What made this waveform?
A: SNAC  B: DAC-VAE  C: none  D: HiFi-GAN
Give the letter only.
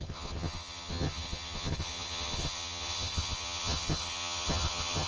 D